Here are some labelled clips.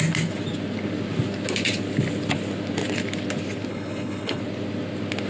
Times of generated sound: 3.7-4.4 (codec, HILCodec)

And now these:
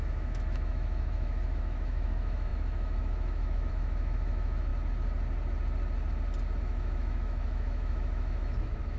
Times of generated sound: 0.0-4.7 (autoencoder, DAC-VAE); 6.6-9.0

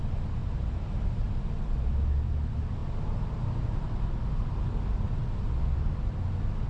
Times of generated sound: 0.4-1.4 (vocoder, BigVGAN v2)